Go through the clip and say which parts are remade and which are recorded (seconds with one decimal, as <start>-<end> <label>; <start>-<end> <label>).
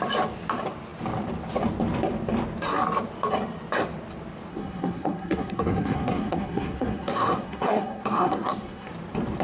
0.0-4.5 recorded; 4.5-8.9 remade; 8.9-9.4 recorded